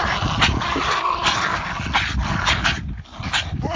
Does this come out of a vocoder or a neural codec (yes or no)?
no